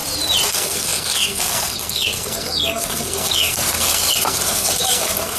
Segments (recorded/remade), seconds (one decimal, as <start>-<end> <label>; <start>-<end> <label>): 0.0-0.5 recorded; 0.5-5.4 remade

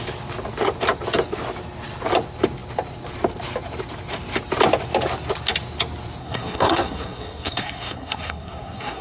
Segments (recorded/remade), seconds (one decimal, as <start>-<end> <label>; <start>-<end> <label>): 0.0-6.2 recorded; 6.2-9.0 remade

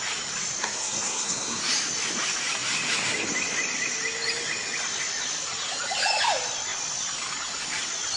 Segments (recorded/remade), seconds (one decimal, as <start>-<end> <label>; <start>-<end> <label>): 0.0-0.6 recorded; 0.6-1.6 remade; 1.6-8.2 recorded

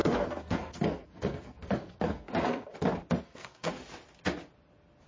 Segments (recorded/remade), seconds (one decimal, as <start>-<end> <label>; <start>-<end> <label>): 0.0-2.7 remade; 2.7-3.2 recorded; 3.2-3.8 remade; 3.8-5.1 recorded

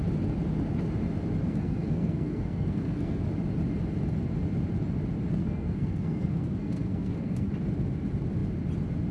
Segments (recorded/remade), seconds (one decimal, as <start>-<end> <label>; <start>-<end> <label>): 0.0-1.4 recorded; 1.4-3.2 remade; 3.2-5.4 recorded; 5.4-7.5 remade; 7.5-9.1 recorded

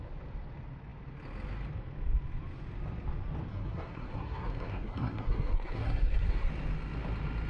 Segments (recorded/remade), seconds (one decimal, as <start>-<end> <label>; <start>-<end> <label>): 0.0-3.5 recorded; 3.5-6.5 remade; 6.5-7.5 recorded

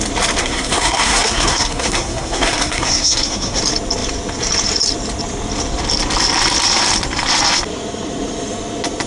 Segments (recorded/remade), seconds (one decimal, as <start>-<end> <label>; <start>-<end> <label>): 0.0-0.4 recorded; 0.4-3.6 remade; 3.6-9.1 recorded